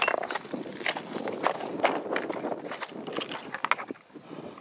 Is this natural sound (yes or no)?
yes